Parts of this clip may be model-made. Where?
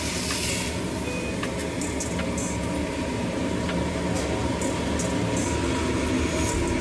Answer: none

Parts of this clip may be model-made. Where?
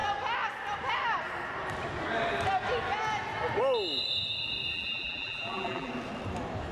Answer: 4.7-5.9 (vocoder, BigVGAN v2)